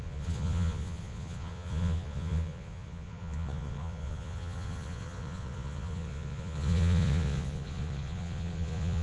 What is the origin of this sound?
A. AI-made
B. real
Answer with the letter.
A